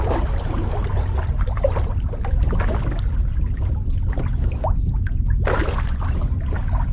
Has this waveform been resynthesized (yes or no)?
no